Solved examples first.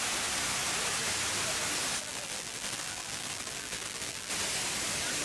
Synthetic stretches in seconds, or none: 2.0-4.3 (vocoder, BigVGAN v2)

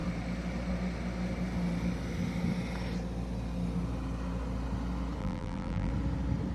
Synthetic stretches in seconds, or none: 5.2-5.9 (vocoder, BigVGAN v2)

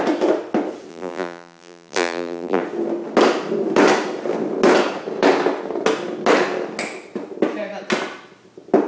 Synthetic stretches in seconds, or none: 0.9-2.6 (vocoder, BigVGAN v2)

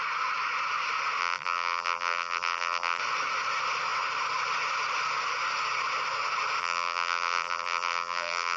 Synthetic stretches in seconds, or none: 1.2-3.0 (vocoder, BigVGAN v2); 6.6-8.6